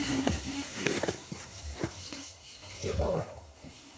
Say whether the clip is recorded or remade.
remade